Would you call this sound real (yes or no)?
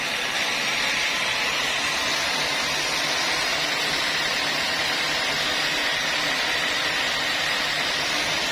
yes